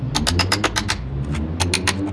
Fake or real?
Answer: real